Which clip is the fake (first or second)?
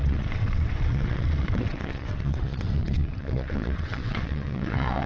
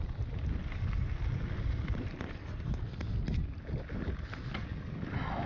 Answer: first